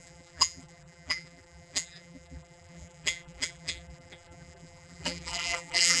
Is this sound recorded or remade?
remade